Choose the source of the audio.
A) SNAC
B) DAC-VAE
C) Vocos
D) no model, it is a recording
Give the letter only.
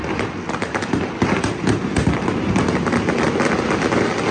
D